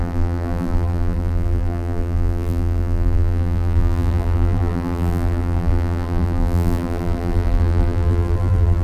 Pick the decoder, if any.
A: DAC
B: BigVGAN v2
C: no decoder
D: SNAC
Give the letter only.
B